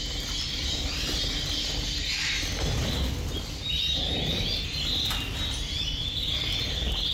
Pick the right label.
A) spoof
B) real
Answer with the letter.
B